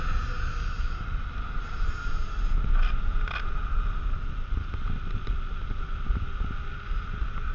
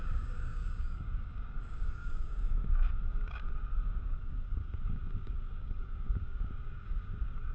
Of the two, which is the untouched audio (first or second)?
first